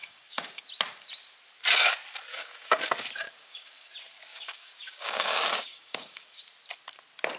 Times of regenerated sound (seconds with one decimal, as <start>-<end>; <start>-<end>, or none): 0.0-0.6; 2.3-2.8; 3.2-3.9; 4.3-6.4